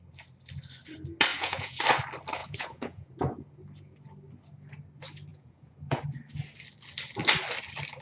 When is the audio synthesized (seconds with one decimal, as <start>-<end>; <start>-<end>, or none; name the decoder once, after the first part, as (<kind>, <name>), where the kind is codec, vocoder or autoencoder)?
1.3-1.8 (vocoder, Vocos); 2.4-3.1; 5.3-6.0